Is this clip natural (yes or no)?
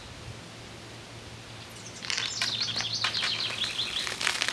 yes